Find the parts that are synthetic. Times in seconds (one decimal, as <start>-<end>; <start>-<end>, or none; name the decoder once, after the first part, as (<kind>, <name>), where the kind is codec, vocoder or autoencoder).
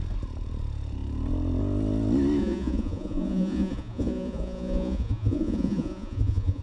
2.4-6.6 (vocoder, Vocos)